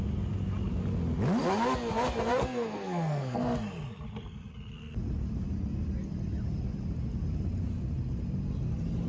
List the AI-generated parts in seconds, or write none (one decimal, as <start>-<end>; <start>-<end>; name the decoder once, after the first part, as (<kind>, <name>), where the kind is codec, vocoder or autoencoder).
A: 2.3-3.4 (codec, SNAC)